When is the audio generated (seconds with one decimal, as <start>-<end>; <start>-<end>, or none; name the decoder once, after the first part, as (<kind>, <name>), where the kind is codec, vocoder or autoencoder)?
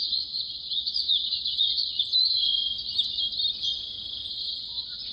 0.0-2.7 (vocoder, Vocos); 4.3-5.1